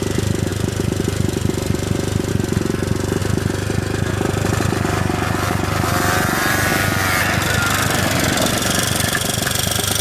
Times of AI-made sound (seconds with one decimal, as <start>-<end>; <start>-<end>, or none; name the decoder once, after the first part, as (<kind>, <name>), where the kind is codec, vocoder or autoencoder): 0.0-3.2 (vocoder, BigVGAN v2); 4.1-6.7; 8.5-10.0